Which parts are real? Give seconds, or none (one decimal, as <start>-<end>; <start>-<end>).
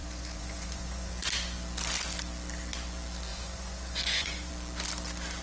1.1-3.3; 4.5-5.4